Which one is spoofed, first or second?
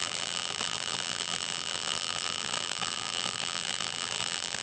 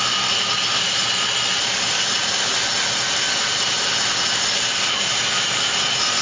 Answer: first